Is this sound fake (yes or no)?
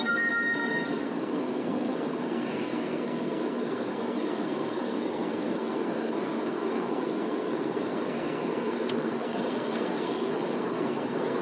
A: yes